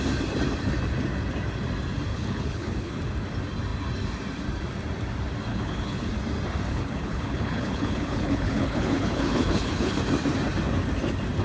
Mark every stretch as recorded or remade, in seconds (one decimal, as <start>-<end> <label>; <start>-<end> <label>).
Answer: 0.0-2.1 recorded; 2.1-3.0 remade; 3.0-5.5 recorded; 5.5-6.1 remade; 6.1-6.7 recorded; 6.7-10.0 remade; 10.0-11.4 recorded